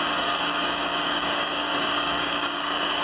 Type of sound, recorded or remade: remade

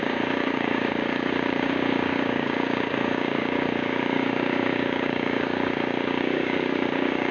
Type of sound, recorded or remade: remade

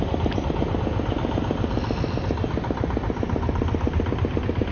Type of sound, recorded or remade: recorded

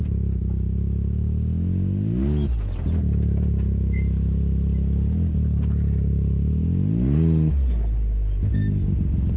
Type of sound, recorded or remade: recorded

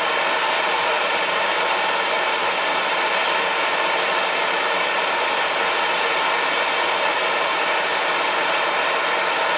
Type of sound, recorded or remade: recorded